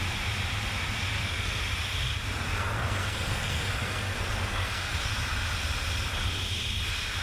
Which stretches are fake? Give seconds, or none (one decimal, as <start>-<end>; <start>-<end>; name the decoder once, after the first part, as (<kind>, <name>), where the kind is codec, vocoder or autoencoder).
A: 1.1-1.6 (codec, SNAC); 2.5-5.1